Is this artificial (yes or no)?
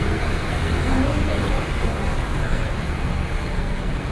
yes